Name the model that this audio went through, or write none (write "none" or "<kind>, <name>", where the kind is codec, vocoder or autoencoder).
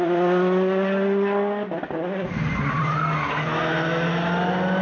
none